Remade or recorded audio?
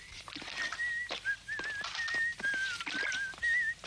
recorded